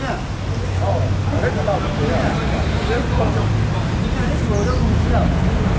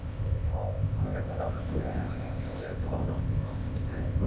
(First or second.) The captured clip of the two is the first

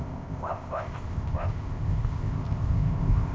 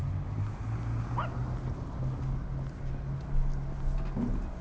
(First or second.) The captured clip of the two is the second